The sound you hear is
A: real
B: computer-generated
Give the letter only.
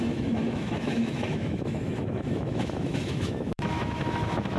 B